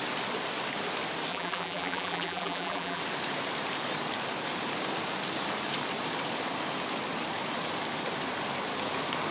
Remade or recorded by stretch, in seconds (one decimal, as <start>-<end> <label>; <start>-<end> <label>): 0.0-1.3 recorded; 1.3-3.0 remade; 3.0-9.3 recorded